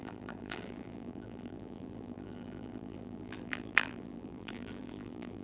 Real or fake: fake